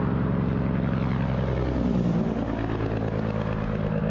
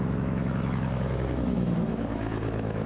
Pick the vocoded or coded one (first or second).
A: second